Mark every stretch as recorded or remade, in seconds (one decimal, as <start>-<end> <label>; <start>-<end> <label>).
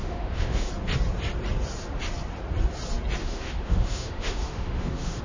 0.0-0.7 remade; 0.7-3.2 recorded; 3.2-5.2 remade